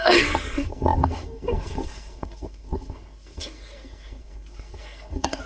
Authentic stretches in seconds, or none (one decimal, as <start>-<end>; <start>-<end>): none